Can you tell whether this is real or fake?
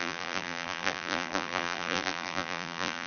fake